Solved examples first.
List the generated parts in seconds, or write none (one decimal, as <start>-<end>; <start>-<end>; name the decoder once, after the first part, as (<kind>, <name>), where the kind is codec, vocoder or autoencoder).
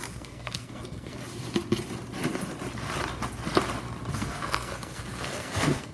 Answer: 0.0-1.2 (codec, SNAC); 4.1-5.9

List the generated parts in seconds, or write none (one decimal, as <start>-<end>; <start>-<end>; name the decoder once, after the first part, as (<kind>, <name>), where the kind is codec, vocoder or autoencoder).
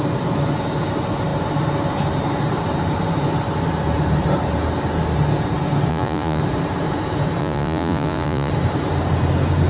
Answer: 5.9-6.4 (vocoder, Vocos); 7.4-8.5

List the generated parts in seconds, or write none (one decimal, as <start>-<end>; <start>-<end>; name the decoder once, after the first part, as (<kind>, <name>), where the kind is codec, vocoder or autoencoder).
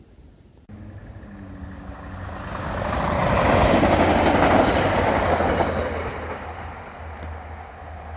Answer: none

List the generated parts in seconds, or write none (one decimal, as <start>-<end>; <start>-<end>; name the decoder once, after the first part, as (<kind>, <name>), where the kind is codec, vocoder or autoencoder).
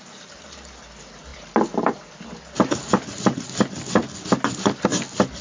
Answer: none